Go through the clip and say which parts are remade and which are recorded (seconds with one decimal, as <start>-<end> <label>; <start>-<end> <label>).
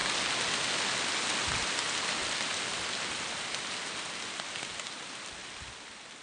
0.0-6.2 recorded